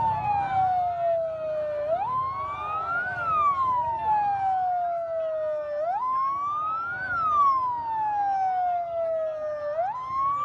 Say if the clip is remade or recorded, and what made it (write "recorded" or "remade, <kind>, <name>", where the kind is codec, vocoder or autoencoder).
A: recorded